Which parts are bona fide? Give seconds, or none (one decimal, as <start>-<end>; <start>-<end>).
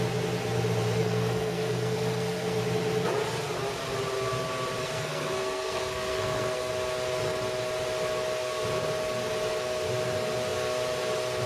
0.0-1.0; 2.6-4.8; 6.7-11.5